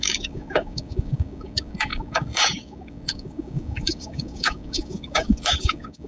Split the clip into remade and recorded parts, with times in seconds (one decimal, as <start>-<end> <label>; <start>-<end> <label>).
0.0-6.1 remade